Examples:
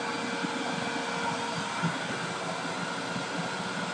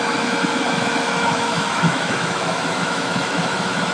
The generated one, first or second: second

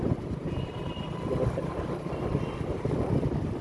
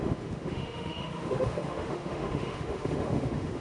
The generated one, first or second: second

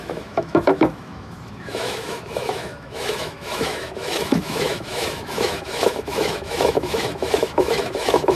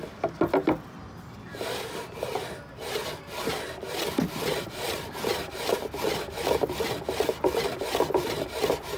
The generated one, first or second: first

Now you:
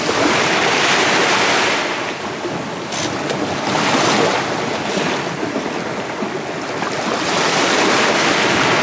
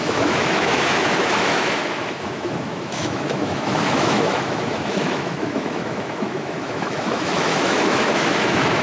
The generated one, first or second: second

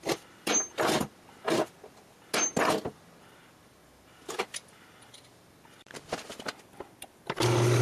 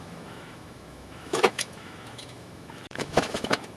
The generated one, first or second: second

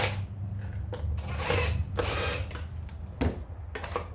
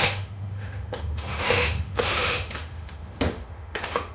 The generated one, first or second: second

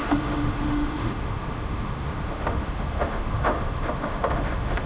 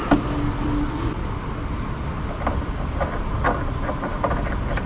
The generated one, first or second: first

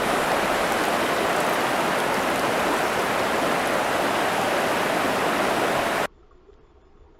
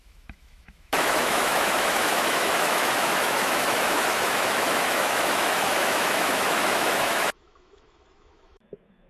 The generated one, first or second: second